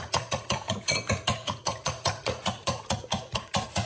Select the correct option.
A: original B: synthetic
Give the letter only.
B